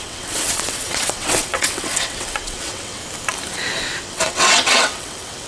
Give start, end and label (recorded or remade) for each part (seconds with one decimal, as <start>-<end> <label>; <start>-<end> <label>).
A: 0.0-3.0 remade; 3.0-4.0 recorded; 4.0-5.5 remade